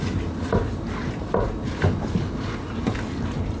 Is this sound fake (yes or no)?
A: no